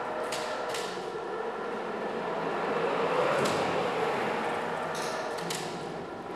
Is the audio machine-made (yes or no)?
no